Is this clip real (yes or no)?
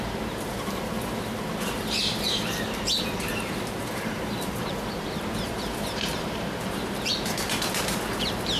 no